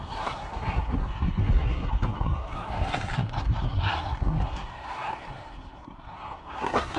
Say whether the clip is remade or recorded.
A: remade